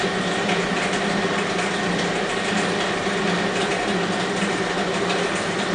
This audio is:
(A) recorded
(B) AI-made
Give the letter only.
A